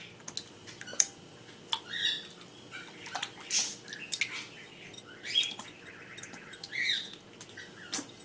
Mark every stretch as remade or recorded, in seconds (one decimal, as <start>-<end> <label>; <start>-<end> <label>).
0.0-0.6 recorded; 0.6-1.6 remade; 1.6-2.5 recorded; 2.5-3.8 remade; 3.8-8.2 recorded